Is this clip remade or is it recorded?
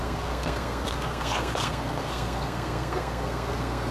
remade